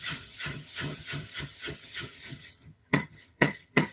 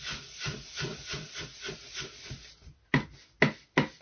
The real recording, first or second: second